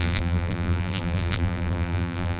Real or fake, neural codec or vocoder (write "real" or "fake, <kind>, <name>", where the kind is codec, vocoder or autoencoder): fake, vocoder, BigVGAN v2